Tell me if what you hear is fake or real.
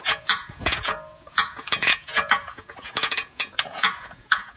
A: fake